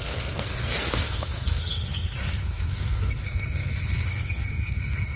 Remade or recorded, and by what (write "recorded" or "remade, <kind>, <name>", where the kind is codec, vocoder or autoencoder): remade, codec, SNAC